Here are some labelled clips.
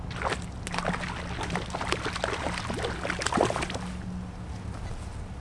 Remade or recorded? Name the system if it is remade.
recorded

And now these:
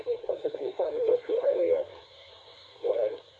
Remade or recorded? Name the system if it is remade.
remade, codec, SNAC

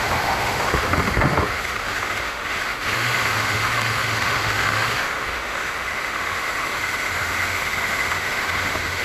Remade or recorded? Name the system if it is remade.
remade, autoencoder, DAC-VAE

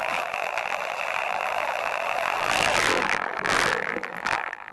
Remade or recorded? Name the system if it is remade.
remade, vocoder, BigVGAN v2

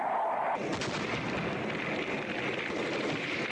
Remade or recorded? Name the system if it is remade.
recorded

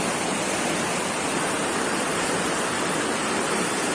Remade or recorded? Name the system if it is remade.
recorded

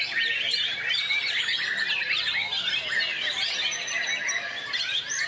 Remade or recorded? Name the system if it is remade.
recorded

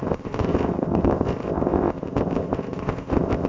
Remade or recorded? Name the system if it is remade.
remade, codec, ZipCodec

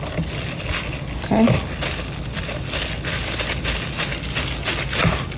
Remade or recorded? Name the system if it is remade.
recorded